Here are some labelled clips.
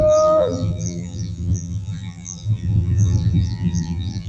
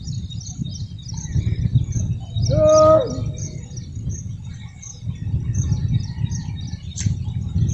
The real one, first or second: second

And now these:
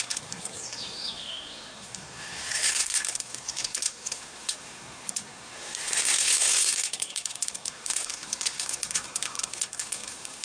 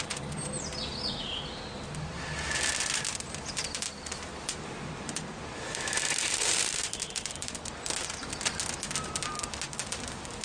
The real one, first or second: second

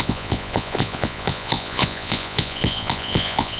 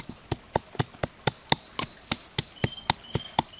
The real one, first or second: second